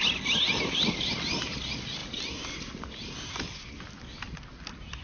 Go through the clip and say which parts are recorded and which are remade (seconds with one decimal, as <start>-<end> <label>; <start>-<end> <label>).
0.0-5.0 recorded